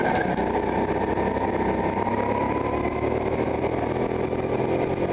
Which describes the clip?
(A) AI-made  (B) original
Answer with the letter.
B